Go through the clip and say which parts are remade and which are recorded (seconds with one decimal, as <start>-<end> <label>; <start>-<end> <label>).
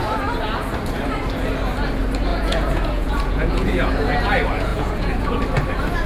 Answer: 0.0-2.3 recorded; 2.3-3.9 remade; 3.9-4.7 recorded; 4.7-5.4 remade; 5.4-6.1 recorded